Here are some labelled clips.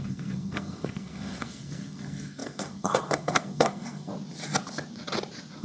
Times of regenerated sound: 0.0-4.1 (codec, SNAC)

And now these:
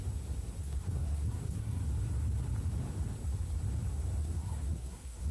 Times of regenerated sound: 0.6-1.8 (codec, SNAC); 4.2-5.3

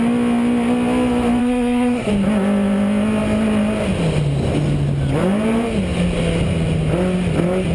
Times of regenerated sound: 1.4-2.1 (codec, SNAC)

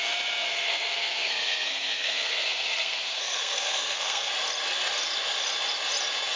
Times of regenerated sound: 0.5-4.3 (codec, SNAC)

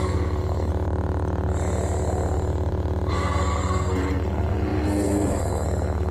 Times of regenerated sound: 0.0-0.7 (codec, SNAC); 3.1-6.1

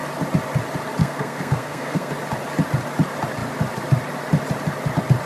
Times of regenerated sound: 1.0-2.1 (codec, SNAC)

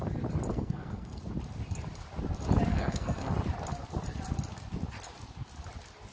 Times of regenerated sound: 0.5-1.2 (codec, SNAC); 2.7-3.3